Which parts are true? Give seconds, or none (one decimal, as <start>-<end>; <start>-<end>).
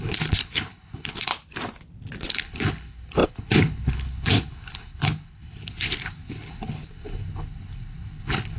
1.3-2.3